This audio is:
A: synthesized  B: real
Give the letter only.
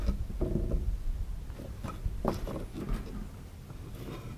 B